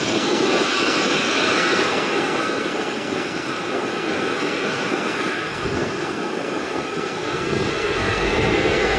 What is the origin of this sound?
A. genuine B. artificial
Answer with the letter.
B